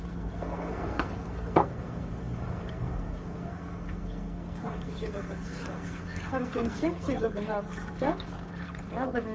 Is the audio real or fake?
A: fake